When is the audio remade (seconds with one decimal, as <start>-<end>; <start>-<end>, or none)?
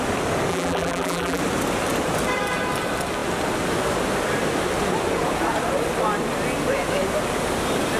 0.5-1.4